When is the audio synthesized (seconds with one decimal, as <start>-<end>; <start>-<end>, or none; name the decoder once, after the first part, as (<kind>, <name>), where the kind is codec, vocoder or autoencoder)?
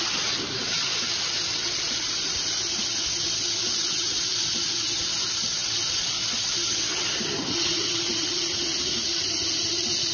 none